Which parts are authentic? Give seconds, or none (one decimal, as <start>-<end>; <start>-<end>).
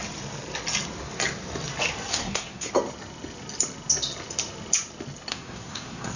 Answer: 0.0-2.1; 2.7-5.3